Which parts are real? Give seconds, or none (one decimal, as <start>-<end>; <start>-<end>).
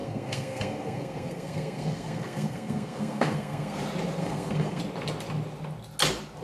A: 3.8-4.2; 4.8-6.4